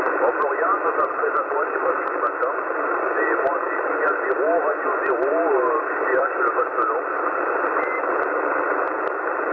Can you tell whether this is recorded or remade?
remade